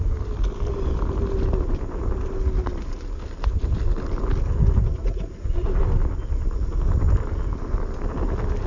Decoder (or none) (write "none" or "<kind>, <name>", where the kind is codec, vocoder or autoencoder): none